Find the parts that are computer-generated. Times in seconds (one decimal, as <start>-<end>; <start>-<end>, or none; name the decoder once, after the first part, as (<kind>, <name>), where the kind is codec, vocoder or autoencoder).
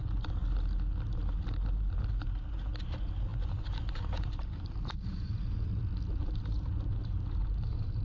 3.3-5.8 (vocoder, BigVGAN v2); 6.2-8.0